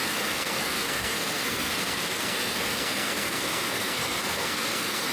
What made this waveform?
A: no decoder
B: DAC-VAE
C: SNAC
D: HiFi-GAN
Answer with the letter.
C